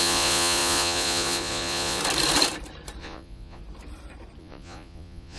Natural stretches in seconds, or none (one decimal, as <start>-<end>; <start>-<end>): 2.0-3.0; 3.6-4.4